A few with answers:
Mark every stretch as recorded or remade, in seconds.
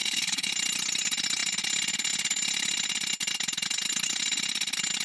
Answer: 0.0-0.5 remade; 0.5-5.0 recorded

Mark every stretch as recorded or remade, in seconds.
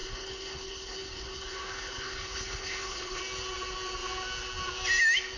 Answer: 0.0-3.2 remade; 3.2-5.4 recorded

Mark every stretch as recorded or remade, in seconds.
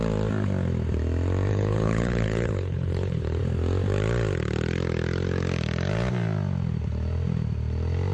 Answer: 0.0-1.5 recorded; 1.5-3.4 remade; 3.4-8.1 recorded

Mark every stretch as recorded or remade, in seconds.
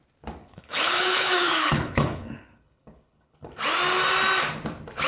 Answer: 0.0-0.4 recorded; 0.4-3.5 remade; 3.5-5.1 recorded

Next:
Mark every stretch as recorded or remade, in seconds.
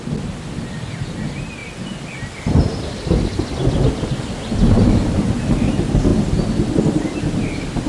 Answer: 0.0-7.9 recorded